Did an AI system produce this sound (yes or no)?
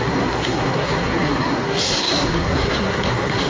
yes